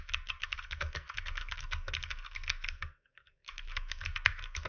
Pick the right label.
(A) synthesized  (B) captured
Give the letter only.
A